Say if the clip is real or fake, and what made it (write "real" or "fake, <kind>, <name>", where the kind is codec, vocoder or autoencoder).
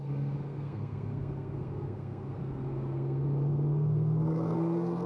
fake, codec, SNAC